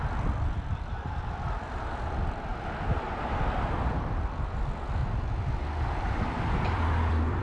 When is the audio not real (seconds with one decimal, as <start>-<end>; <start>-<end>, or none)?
0.0-2.5; 3.2-5.0; 5.8-7.4